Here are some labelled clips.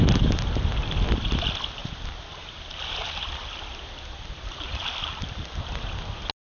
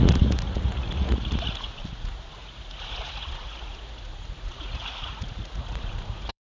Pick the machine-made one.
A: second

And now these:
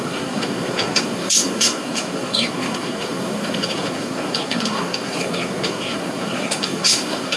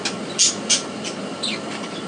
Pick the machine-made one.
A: first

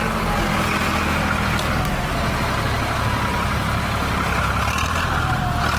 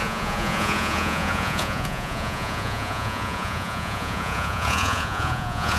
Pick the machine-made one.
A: second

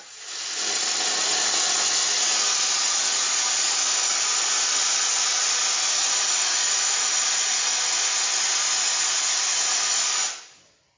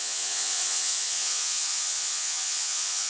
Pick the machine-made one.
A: second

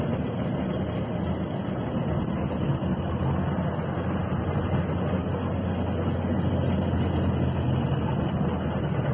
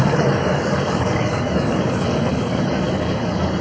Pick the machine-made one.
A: second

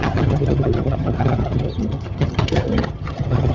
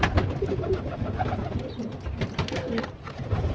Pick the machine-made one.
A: first